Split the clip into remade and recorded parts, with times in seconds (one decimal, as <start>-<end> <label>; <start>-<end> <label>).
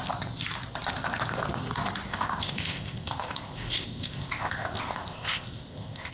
0.0-2.1 recorded; 2.1-6.1 remade